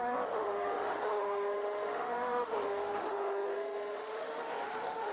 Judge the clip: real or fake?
fake